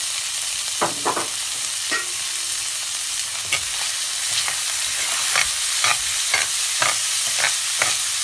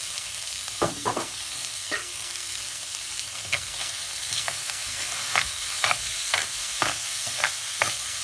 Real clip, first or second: first